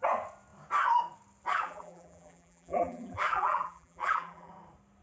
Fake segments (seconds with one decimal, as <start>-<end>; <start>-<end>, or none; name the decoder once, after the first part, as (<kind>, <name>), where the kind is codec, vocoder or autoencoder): 1.5-4.5 (vocoder, BigVGAN v2)